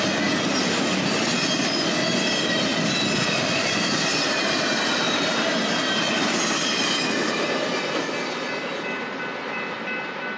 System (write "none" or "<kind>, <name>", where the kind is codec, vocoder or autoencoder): none